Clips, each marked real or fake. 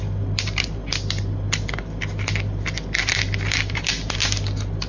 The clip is real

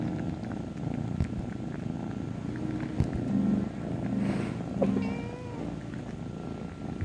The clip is real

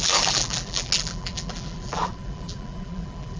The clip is fake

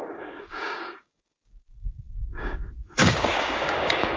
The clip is fake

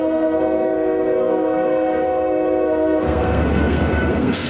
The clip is fake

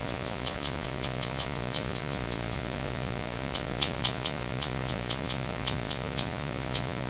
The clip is fake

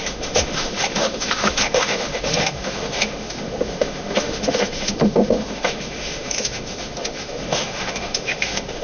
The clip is fake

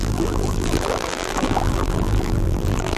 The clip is fake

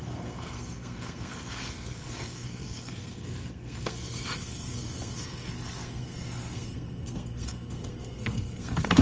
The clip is fake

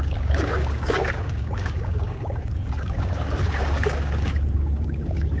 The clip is fake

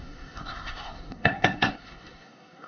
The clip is fake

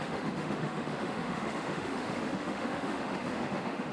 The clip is fake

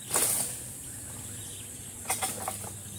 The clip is real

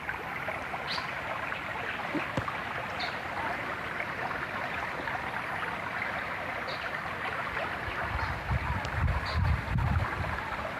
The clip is real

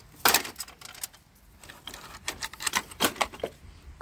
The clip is real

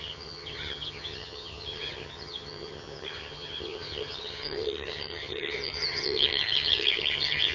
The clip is fake